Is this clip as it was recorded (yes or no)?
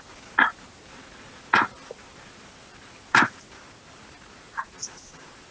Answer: yes